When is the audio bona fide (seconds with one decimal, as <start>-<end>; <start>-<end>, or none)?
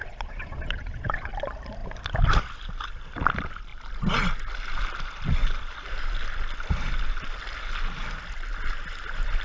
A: 1.3-9.4